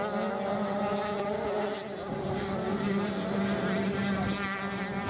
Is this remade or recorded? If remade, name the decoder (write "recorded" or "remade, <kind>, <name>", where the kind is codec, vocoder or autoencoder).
recorded